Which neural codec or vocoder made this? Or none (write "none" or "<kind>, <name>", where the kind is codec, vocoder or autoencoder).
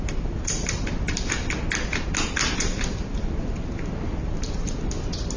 none